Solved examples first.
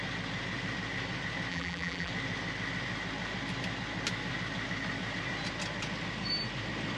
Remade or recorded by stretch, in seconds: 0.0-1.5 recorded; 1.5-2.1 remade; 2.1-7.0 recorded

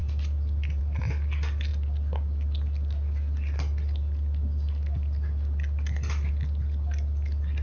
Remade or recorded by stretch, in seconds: 0.0-7.6 recorded

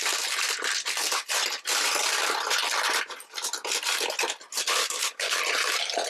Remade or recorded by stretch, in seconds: 0.0-4.8 recorded; 4.8-5.4 remade; 5.4-6.1 recorded

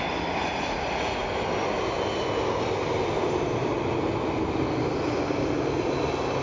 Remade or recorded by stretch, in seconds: 0.0-0.4 recorded; 0.4-1.3 remade; 1.3-6.4 recorded

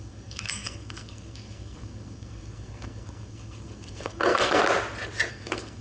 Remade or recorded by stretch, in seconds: 0.0-4.6 remade; 4.6-5.3 recorded; 5.3-5.8 remade

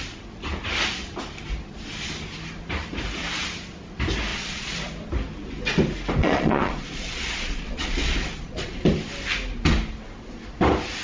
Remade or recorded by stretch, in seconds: 0.0-4.3 recorded; 4.3-4.9 remade; 4.9-6.2 recorded; 6.2-8.8 remade; 8.8-11.0 recorded

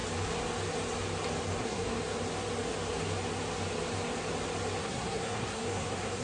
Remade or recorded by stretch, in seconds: 0.0-1.6 recorded; 1.6-2.0 remade; 2.0-4.8 recorded; 4.8-6.2 remade